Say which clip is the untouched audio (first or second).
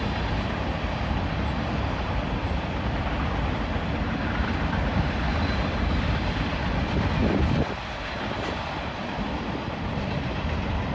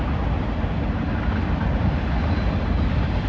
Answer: second